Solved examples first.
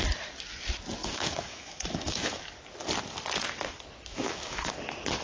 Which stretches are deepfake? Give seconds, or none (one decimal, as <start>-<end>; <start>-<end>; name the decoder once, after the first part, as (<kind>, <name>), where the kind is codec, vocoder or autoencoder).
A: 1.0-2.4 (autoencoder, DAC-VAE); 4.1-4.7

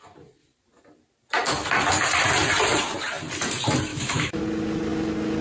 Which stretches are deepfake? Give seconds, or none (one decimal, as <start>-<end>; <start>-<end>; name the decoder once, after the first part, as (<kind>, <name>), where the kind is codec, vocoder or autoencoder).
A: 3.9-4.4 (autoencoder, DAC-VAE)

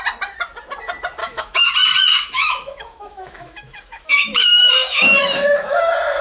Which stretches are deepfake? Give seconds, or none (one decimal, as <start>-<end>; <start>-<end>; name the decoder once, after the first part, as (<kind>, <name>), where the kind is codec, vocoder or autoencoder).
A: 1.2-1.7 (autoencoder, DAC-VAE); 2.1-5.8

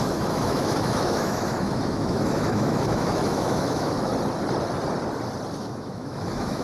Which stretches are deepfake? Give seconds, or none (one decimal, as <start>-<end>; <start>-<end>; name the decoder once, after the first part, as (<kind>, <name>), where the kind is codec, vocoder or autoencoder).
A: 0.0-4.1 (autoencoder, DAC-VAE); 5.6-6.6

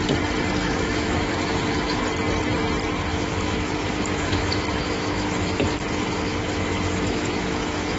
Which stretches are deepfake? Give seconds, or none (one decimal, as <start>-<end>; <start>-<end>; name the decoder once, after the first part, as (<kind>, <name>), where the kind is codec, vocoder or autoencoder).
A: 0.6-2.0 (autoencoder, DAC-VAE); 3.1-8.0

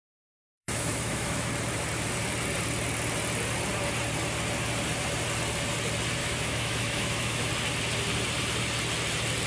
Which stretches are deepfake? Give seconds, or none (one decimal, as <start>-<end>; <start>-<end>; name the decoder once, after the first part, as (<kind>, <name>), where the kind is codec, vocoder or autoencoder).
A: 0.0-1.5 (autoencoder, DAC-VAE); 6.2-7.5